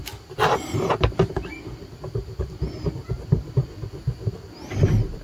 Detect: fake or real real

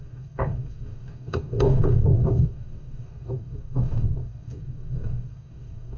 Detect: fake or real fake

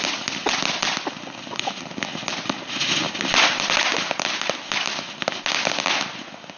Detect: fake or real real